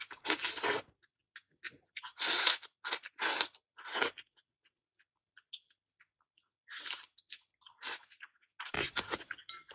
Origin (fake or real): real